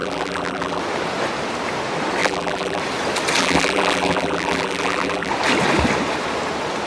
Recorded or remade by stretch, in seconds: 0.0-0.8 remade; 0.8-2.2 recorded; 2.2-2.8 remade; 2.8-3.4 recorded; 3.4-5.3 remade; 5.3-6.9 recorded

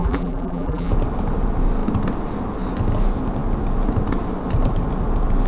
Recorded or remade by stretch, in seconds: 0.0-0.9 remade; 0.9-5.5 recorded